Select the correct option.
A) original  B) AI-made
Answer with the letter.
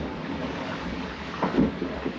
B